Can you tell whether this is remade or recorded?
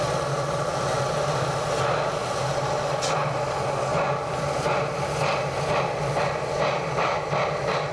recorded